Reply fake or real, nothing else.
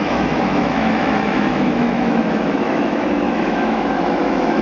fake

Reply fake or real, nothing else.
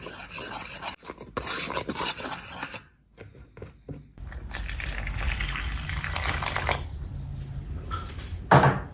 real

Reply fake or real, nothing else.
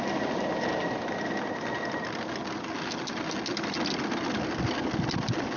real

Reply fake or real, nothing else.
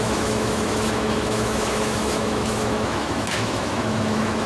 fake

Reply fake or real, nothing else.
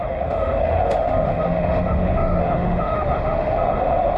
fake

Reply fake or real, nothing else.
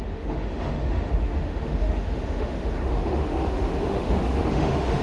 fake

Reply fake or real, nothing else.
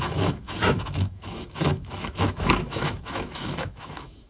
fake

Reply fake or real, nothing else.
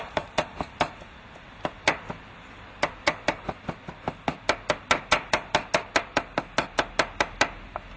real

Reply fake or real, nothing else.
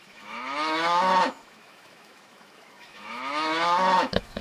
fake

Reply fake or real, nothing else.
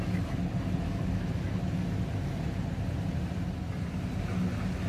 real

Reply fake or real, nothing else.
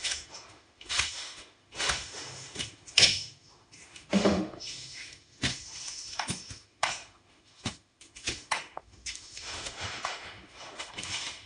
fake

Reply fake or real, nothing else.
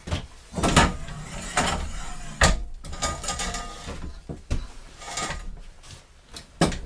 real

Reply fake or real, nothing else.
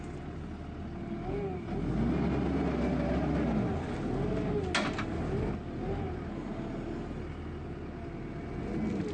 real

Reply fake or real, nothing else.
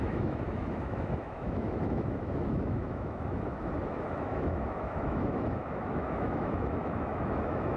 fake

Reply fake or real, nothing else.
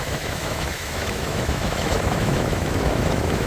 fake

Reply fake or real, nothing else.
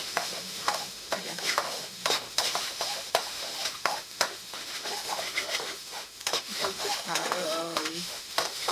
fake